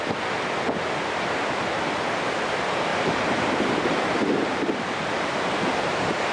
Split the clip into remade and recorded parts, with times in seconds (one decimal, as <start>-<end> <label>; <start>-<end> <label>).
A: 0.0-2.9 recorded; 2.9-5.5 remade; 5.5-6.3 recorded